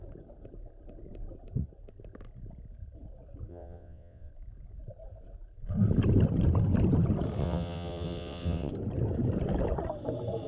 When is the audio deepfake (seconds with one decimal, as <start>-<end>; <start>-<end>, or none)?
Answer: 3.5-4.3; 7.4-8.7